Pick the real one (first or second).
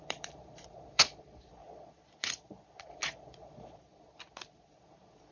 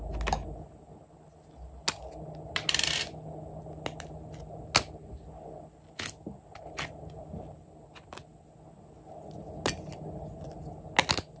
second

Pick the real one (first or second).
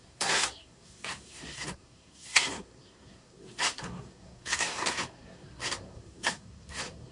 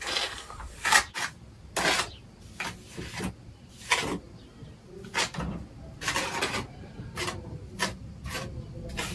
second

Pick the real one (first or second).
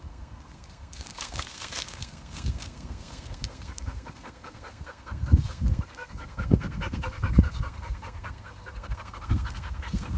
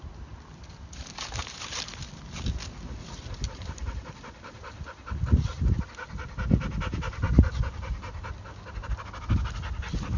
second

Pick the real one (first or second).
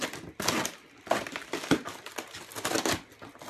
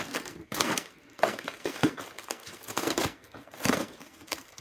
first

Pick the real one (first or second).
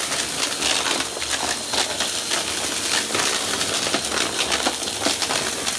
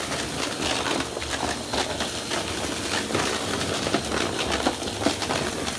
first